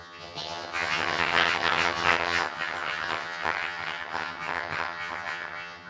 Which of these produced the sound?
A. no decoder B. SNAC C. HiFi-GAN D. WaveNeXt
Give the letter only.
C